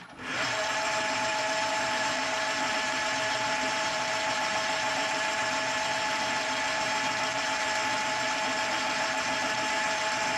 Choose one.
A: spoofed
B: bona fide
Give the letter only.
A